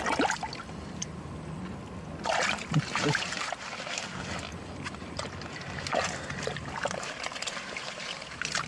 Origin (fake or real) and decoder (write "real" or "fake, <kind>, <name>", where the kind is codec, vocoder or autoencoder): real